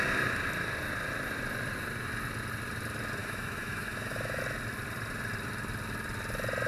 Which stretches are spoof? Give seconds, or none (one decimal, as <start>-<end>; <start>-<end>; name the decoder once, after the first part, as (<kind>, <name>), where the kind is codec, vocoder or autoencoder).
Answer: 3.2-4.4 (autoencoder, DAC-VAE)